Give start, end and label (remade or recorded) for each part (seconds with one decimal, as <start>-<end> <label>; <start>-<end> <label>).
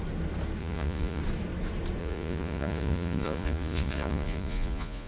0.0-0.6 recorded; 0.6-1.2 remade; 1.2-2.0 recorded; 2.0-5.1 remade